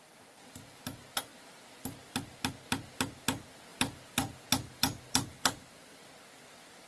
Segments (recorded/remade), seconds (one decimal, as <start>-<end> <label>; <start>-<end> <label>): 0.0-6.9 recorded